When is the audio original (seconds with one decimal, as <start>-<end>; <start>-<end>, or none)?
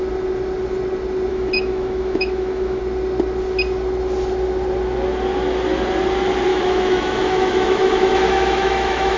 0.0-1.3; 2.8-6.5